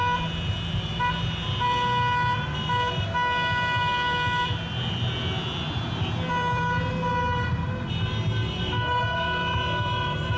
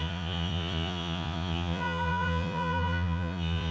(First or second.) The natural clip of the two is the first